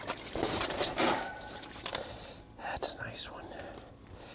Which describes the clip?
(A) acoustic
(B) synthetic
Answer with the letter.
B